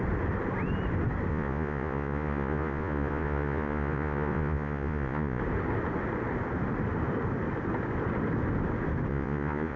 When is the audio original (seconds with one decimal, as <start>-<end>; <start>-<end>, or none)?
0.0-1.3; 5.4-9.1